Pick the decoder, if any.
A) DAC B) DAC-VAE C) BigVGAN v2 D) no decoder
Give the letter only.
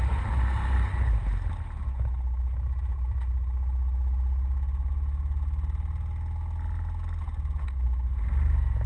D